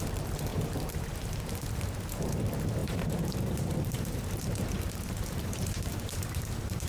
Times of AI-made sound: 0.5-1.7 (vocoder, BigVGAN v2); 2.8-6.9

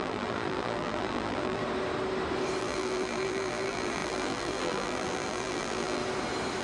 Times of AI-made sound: 0.0-1.6 (vocoder, BigVGAN v2); 2.6-6.0

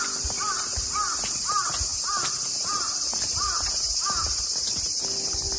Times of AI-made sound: 0.0-1.9 (vocoder, BigVGAN v2); 4.4-5.6